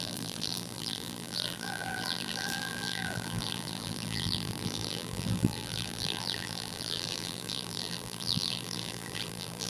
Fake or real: fake